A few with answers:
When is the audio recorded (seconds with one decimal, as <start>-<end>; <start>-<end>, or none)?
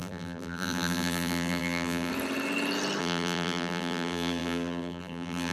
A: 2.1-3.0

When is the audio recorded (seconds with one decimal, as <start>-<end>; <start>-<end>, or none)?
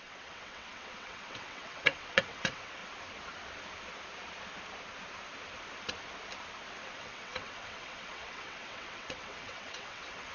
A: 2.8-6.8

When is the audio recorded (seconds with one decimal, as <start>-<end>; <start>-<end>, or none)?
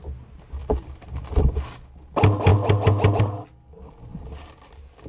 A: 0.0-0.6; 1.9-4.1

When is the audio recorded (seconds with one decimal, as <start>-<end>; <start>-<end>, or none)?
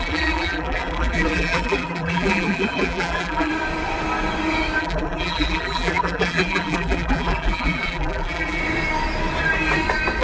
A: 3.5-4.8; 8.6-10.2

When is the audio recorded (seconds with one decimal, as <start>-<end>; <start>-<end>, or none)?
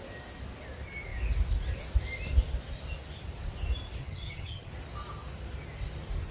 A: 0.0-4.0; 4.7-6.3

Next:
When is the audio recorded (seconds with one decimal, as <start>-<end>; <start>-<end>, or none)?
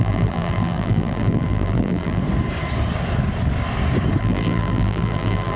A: 2.2-4.2